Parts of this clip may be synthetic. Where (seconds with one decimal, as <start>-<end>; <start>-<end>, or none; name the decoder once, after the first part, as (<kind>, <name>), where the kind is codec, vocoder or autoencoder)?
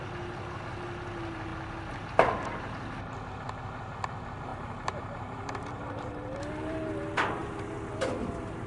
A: 4.5-6.9 (vocoder, BigVGAN v2); 7.4-7.9